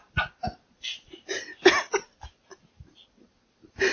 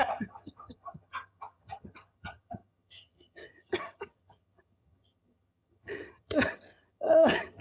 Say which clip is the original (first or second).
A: first